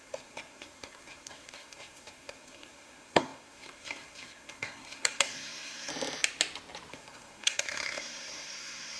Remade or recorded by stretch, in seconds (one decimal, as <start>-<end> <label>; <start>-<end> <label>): 0.0-5.9 remade; 5.9-6.9 recorded; 6.9-9.0 remade